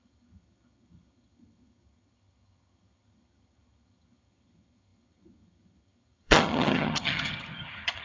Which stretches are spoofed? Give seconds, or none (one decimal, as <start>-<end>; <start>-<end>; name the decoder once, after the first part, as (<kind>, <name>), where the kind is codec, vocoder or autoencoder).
0.0-8.0 (vocoder, HiFi-GAN)